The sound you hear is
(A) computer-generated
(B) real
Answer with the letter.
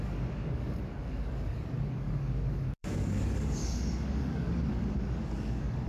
A